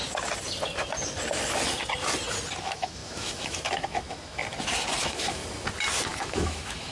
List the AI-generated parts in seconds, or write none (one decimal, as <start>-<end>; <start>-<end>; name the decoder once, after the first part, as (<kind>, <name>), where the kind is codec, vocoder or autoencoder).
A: 2.6-4.4 (autoencoder, DAC-VAE); 5.0-5.4; 6.2-6.9